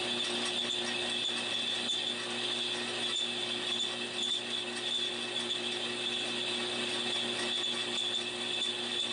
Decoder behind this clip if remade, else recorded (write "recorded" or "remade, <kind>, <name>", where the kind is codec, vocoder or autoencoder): recorded